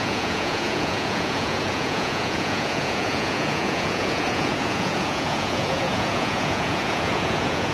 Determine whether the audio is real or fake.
fake